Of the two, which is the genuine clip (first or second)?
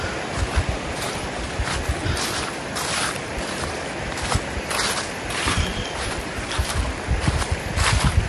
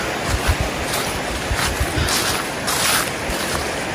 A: second